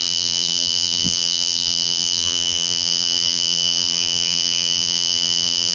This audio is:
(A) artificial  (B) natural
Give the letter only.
A